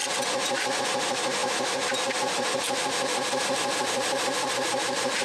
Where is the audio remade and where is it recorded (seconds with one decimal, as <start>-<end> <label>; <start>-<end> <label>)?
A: 0.0-1.4 recorded; 1.4-4.5 remade; 4.5-5.2 recorded